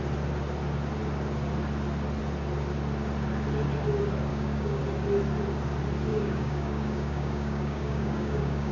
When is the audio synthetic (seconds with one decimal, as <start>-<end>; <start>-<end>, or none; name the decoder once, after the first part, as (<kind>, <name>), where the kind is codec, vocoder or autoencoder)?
4.3-4.8 (codec, DAC); 6.1-8.7